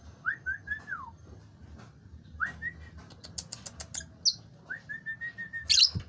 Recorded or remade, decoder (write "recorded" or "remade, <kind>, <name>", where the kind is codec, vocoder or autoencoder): recorded